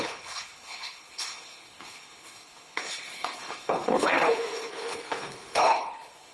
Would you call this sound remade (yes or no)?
yes